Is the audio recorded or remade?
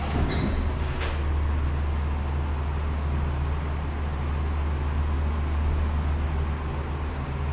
recorded